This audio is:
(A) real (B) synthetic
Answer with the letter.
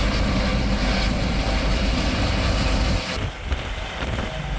A